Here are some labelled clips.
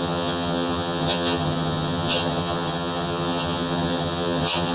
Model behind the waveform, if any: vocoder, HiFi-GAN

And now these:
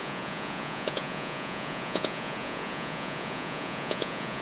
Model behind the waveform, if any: vocoder, Vocos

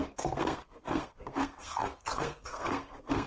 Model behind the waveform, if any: codec, SNAC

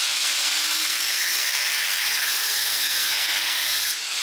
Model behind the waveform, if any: codec, SNAC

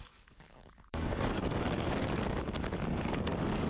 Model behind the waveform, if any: codec, DAC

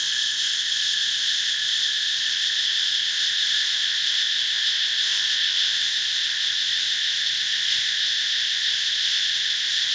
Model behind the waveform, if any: codec, ZipCodec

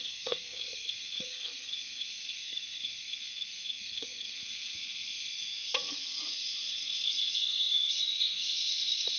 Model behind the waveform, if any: codec, SNAC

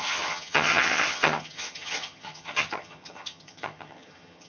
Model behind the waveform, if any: vocoder, HiFi-GAN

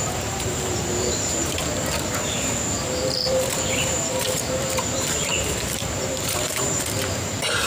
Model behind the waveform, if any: vocoder, BigVGAN v2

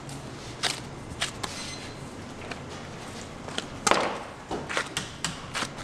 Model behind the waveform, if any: none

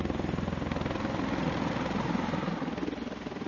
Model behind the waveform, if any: none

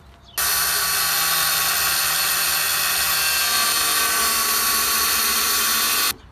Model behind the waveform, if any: none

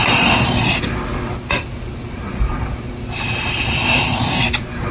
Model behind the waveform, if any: none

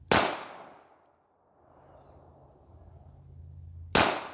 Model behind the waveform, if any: none